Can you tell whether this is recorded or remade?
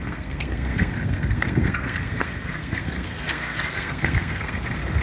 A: remade